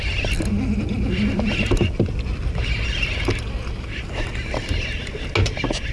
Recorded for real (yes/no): yes